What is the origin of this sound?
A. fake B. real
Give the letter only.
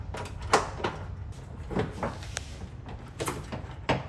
B